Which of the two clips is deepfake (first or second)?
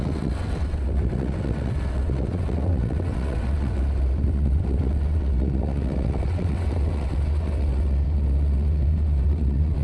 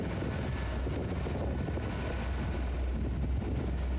first